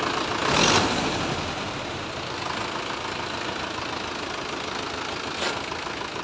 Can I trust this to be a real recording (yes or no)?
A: yes